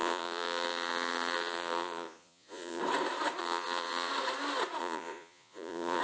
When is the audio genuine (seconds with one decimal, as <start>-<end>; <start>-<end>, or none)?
2.8-3.4; 4.1-4.8